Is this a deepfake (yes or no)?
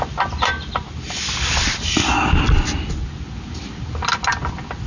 no